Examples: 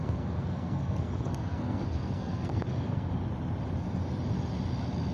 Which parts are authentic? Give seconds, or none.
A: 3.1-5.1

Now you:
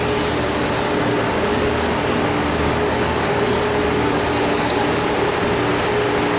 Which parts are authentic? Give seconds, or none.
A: 0.0-1.5; 5.1-6.4